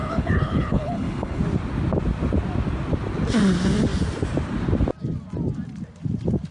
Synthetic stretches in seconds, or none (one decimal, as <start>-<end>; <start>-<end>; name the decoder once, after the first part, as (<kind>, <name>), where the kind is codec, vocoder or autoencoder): 0.0-1.4 (codec, HILCodec)